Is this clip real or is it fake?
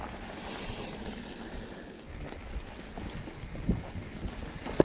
real